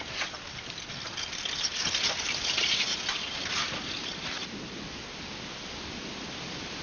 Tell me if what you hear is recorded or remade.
recorded